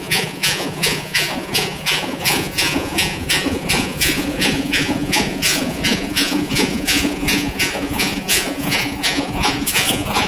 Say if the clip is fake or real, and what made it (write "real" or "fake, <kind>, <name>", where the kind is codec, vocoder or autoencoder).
fake, vocoder, Vocos